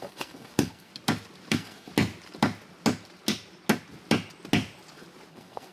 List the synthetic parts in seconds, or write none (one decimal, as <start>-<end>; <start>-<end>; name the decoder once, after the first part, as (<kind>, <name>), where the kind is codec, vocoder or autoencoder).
0.0-0.9 (codec, SNAC); 1.5-1.9; 5.3-5.7